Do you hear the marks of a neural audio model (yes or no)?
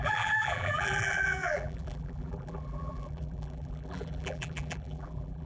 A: yes